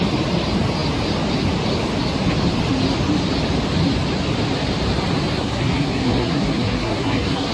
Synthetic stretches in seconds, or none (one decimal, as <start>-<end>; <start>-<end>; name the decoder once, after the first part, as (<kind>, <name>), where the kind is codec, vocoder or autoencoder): 5.4-7.5 (codec, SNAC)